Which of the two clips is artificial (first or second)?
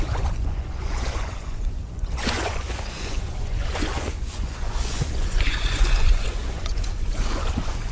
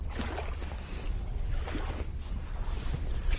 first